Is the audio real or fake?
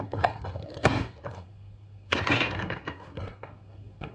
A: fake